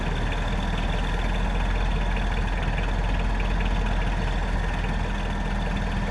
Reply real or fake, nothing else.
real